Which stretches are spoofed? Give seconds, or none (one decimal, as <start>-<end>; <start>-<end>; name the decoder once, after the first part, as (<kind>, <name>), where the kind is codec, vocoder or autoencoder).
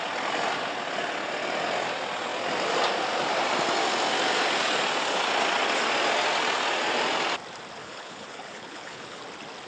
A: 7.8-9.2 (codec, HILCodec)